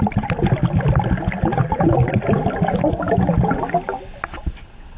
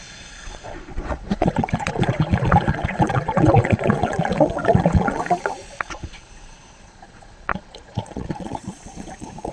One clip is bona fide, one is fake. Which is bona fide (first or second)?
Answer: first